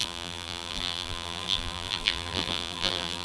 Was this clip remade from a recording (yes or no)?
yes